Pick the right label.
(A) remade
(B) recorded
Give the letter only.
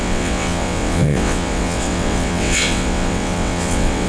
A